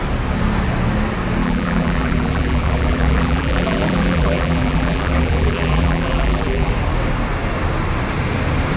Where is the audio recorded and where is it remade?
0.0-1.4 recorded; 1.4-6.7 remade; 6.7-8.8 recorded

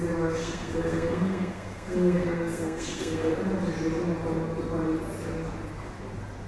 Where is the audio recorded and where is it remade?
0.0-0.4 recorded; 0.4-3.3 remade; 3.3-6.5 recorded

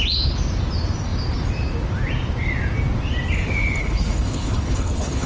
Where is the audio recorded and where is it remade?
0.0-3.8 recorded; 3.8-5.3 remade